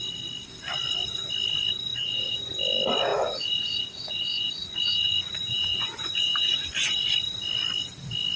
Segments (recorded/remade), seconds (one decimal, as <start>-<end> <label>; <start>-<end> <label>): 0.0-1.9 recorded; 1.9-2.5 remade; 2.5-3.1 recorded; 3.1-7.0 remade; 7.0-8.4 recorded